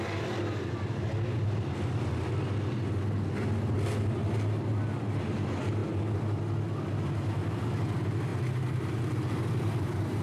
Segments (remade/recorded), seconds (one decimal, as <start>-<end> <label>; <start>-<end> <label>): 0.0-10.2 recorded